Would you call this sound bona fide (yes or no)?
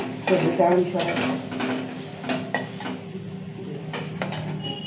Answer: yes